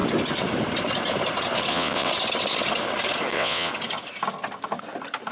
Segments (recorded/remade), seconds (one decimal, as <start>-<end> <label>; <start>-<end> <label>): 0.0-1.7 recorded; 1.7-2.1 remade; 2.1-3.3 recorded; 3.3-3.7 remade; 3.7-5.3 recorded